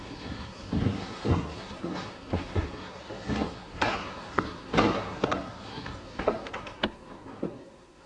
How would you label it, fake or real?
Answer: fake